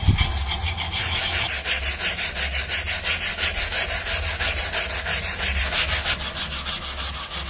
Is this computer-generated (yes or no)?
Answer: no